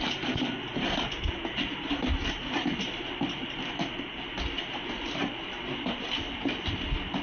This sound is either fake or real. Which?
real